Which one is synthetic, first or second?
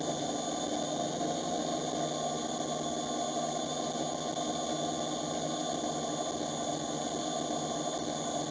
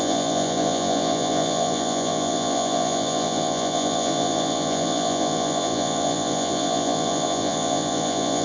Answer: second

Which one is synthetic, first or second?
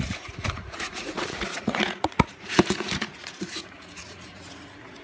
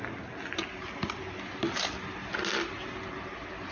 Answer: first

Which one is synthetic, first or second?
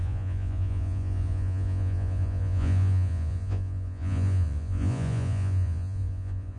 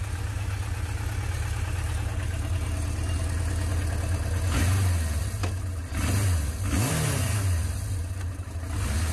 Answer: first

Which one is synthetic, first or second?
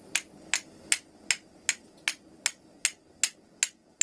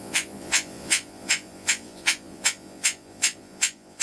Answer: second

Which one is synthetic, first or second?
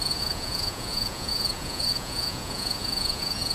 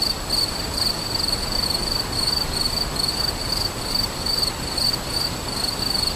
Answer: first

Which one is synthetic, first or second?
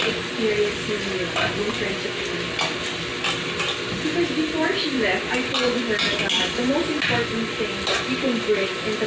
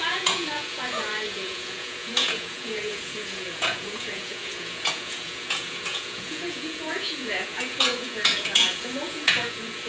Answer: second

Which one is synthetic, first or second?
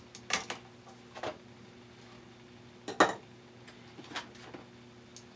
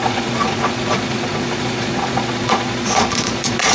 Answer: second